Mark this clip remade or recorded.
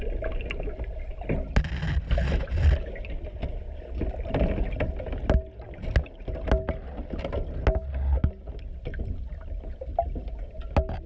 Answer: recorded